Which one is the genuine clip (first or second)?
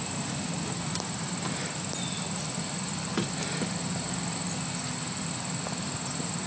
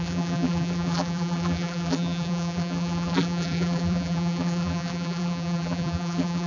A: first